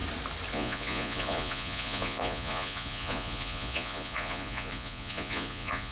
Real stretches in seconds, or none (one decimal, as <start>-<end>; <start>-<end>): 0.0-0.5